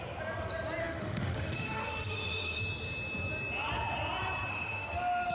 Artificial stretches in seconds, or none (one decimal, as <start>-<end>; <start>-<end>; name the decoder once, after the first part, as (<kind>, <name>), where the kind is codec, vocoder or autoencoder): 0.8-2.6 (autoencoder, DAC-VAE); 4.5-5.3